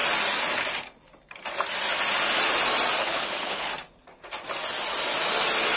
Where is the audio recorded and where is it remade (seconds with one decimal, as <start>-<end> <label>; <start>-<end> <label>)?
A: 0.0-3.0 recorded; 3.0-3.7 remade; 3.7-5.8 recorded